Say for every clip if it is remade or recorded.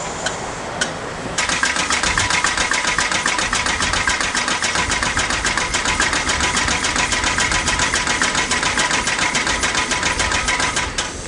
recorded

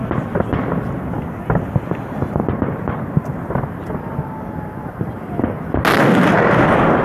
recorded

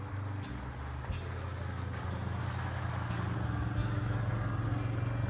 recorded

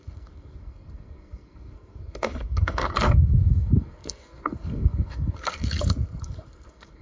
remade